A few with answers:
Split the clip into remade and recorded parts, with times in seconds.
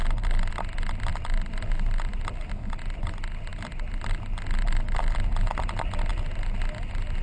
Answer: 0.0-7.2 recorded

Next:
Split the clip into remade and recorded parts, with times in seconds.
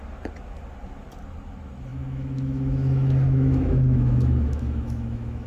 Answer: 0.0-1.9 recorded; 1.9-5.5 remade